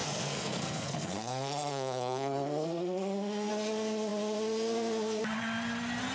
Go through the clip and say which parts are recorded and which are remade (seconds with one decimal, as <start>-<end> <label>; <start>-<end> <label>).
0.0-3.5 remade; 3.5-6.1 recorded